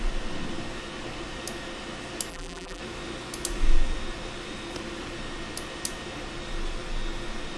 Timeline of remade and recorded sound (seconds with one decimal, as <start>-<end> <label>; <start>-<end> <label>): 0.0-2.3 recorded; 2.3-2.8 remade; 2.8-7.6 recorded